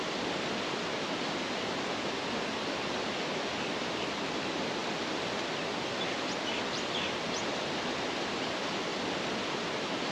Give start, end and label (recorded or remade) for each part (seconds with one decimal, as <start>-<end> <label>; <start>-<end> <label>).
0.0-10.1 recorded